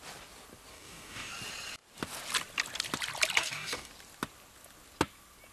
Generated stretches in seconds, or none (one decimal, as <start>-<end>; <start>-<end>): 0.7-1.3; 3.4-3.9